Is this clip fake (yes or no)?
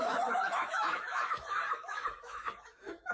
yes